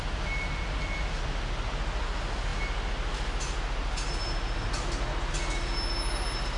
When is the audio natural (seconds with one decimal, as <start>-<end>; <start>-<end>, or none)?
0.0-6.6